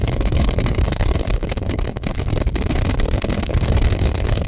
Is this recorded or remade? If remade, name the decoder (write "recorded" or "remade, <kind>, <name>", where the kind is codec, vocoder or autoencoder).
remade, codec, SNAC